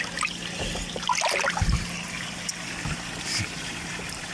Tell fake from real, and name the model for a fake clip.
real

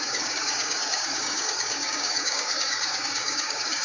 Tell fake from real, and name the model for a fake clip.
fake, codec, DAC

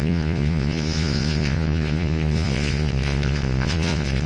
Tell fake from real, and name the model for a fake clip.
fake, vocoder, Vocos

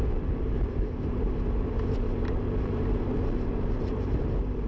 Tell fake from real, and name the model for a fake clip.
fake, vocoder, BigVGAN v2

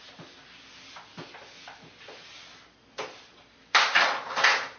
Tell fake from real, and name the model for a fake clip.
real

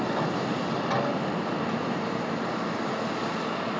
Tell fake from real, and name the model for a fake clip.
real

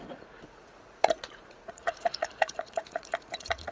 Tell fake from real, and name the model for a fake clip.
fake, vocoder, Vocos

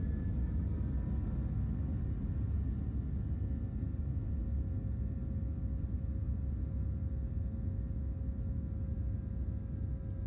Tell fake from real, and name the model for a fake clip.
real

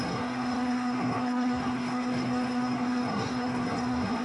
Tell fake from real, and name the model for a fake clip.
fake, codec, SNAC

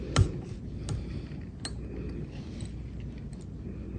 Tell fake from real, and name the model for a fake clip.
real